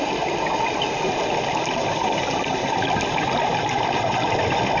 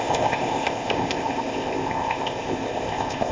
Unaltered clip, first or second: first